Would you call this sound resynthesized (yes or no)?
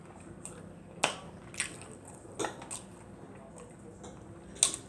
no